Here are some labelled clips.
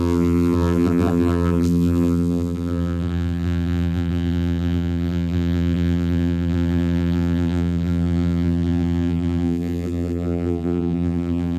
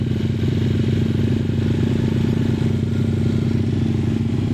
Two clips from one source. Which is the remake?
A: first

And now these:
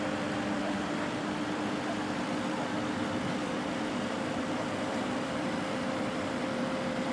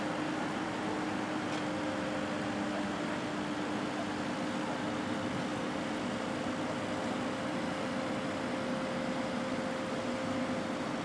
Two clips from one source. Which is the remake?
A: first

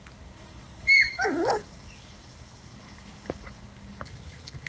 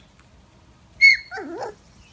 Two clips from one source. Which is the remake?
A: first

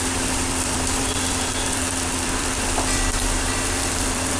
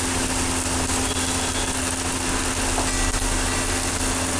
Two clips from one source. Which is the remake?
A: first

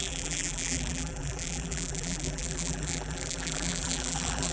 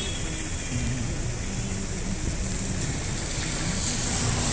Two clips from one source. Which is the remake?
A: first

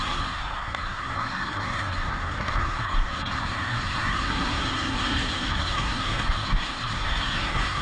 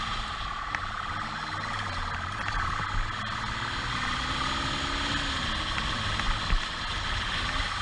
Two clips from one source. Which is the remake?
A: first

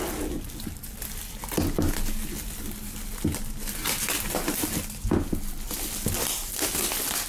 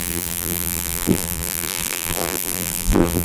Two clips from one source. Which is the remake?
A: second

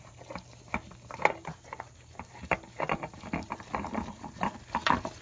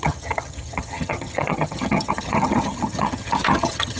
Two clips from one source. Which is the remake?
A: second